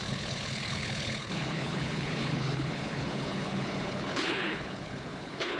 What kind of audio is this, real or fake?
fake